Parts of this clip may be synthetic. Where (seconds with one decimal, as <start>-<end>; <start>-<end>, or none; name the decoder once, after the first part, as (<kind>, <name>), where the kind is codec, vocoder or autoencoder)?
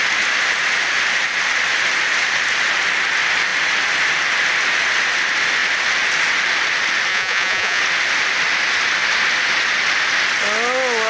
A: 7.1-7.8 (vocoder, Vocos)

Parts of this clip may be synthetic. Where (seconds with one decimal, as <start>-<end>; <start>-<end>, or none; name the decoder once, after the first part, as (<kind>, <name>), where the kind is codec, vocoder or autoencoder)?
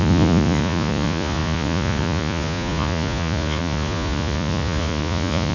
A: 0.0-5.5 (vocoder, Vocos)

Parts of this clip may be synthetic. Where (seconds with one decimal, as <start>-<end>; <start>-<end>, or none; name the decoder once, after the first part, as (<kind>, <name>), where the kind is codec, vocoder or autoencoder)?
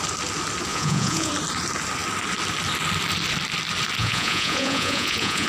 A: 0.7-1.3 (vocoder, Vocos); 4.0-5.5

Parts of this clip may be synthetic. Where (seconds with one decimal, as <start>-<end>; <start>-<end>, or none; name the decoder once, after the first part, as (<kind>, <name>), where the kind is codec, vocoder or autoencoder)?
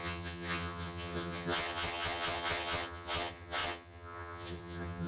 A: 0.0-5.1 (vocoder, HiFi-GAN)